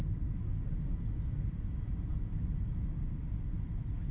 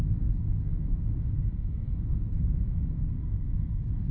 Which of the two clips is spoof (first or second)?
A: second